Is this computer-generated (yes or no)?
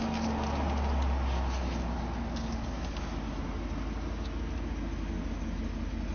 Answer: no